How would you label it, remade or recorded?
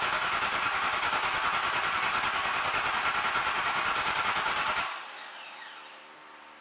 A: recorded